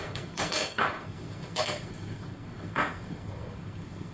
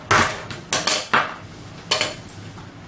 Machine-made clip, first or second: first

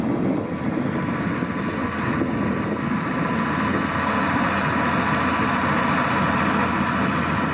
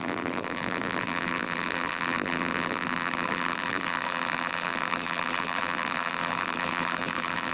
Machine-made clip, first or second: second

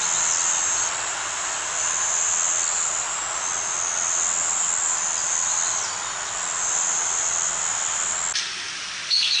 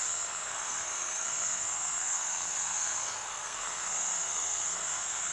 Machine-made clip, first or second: second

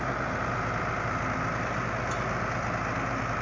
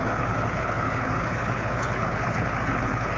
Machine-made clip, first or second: second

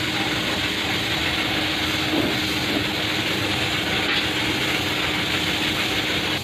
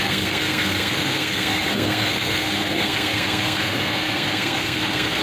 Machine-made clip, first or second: second